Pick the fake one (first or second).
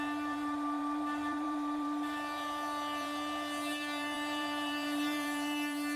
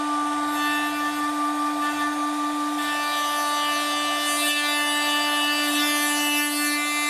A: first